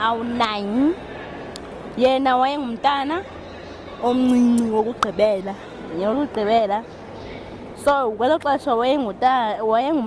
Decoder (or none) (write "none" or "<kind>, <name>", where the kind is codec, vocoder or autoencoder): none